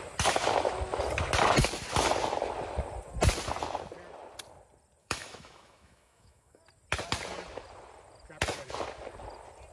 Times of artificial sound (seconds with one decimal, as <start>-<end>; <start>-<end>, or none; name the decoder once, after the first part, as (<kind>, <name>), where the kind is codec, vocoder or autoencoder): 5.0-6.6 (autoencoder, DAC-VAE)